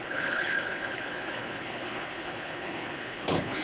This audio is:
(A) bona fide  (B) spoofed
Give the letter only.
B